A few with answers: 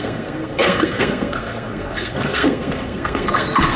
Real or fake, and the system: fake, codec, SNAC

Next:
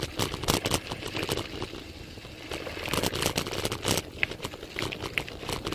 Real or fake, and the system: real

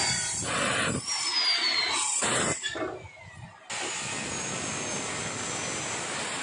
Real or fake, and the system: real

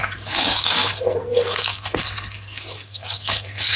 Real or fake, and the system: fake, codec, SNAC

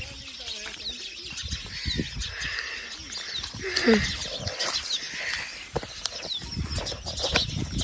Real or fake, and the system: real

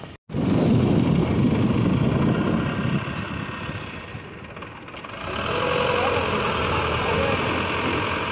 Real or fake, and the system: real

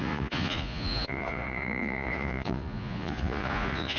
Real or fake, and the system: fake, vocoder, Vocos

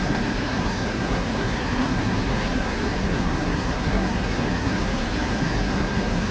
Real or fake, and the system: fake, codec, SNAC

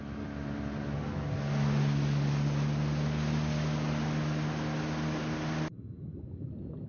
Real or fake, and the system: real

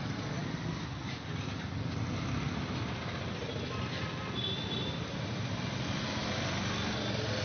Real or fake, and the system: real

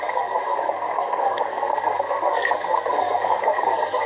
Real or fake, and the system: fake, codec, SNAC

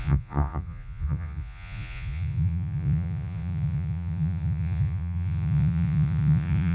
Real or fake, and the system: fake, vocoder, Vocos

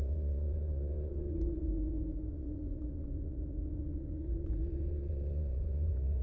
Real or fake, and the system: fake, vocoder, Vocos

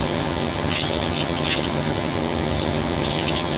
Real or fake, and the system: fake, vocoder, HiFi-GAN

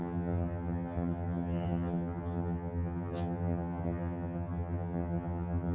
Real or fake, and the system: fake, vocoder, HiFi-GAN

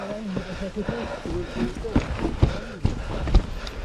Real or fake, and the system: real